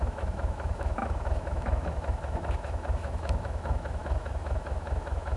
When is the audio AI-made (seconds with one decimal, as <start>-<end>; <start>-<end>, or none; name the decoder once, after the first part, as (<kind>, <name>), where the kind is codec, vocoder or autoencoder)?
0.0-5.4 (autoencoder, DAC-VAE)